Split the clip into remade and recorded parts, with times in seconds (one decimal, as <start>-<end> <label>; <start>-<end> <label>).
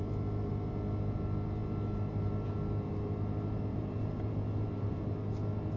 0.0-3.7 recorded; 3.7-5.0 remade; 5.0-5.8 recorded